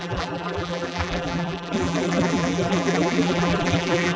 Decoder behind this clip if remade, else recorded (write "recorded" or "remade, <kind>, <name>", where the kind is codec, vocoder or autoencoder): remade, vocoder, BigVGAN v2